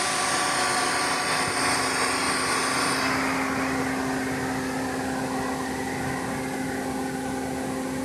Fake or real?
real